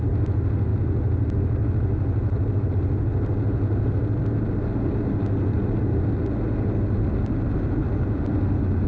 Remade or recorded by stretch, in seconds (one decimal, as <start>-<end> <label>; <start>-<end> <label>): 0.0-8.9 recorded